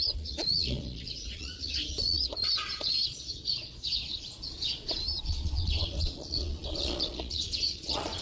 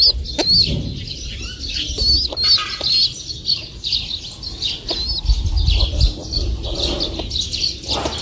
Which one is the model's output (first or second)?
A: first